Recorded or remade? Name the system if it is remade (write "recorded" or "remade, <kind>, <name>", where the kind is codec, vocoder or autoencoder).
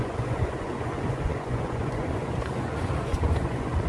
remade, vocoder, Vocos